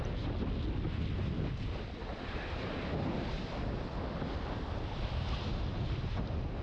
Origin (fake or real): real